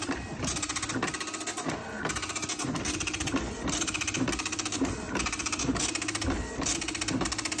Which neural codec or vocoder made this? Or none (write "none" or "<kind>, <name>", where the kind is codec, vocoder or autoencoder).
none